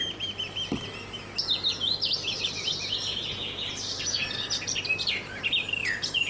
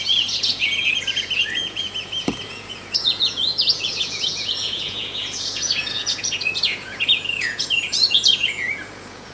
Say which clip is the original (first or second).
first